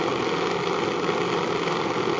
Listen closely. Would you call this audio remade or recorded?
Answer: recorded